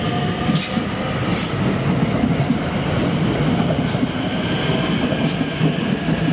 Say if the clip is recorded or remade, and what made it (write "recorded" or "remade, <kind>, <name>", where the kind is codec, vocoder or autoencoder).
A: recorded